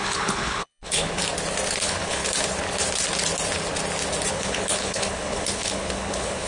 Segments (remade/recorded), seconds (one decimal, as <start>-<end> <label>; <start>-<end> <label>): 0.0-1.2 remade; 1.2-1.8 recorded; 1.8-2.2 remade; 2.2-4.3 recorded; 4.3-6.5 remade